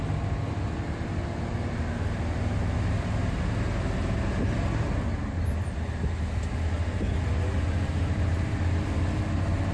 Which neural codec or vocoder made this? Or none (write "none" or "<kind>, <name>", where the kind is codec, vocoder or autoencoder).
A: none